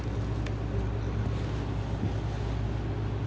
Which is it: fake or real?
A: real